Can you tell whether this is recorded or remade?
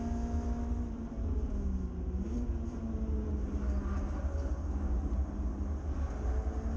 recorded